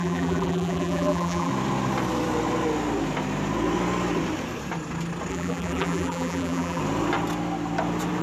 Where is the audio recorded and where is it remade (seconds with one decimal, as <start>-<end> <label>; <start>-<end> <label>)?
0.0-1.5 remade; 1.5-5.3 recorded; 5.3-6.8 remade; 6.8-8.2 recorded